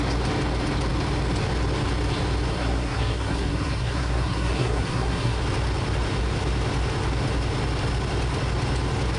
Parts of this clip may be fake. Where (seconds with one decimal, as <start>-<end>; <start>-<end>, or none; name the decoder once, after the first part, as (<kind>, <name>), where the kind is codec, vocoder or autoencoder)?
2.5-5.4 (codec, SNAC)

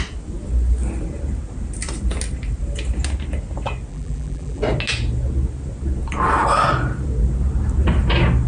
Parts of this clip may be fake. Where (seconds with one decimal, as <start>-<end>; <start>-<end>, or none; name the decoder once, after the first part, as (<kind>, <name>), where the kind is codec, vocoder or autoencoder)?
3.9-4.6 (vocoder, BigVGAN v2)

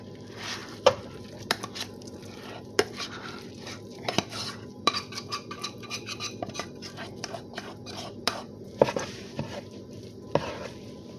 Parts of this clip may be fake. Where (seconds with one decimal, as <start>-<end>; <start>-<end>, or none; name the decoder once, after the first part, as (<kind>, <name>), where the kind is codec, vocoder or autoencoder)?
0.0-11.2 (vocoder, BigVGAN v2)

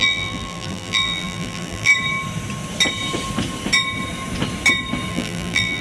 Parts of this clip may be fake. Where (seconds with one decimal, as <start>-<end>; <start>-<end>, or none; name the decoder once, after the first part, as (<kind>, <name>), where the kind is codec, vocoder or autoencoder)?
0.0-1.9 (vocoder, BigVGAN v2); 5.1-5.8